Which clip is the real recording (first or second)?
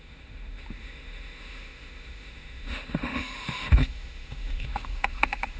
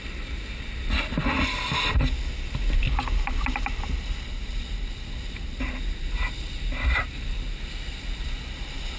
second